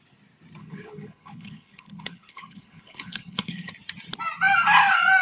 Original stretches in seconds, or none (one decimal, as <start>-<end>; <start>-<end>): 0.0-0.6; 3.7-5.2

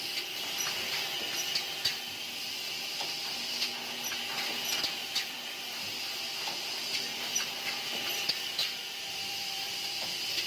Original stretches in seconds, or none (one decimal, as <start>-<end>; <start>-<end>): 0.0-8.6

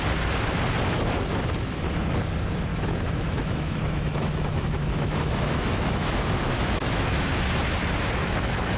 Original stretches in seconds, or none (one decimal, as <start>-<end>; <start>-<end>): 0.0-2.7; 7.3-8.8

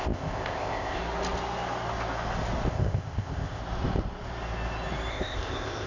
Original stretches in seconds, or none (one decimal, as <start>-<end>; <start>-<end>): 1.0-2.7; 3.6-5.1

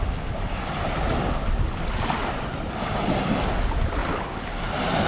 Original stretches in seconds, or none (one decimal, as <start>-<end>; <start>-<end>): 0.0-5.1